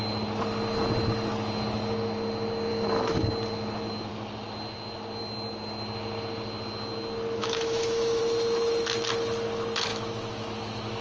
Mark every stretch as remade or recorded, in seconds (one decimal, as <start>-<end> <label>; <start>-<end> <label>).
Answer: 0.0-2.7 recorded; 2.7-3.3 remade; 3.3-7.4 recorded; 7.4-8.2 remade; 8.2-9.9 recorded; 9.9-11.0 remade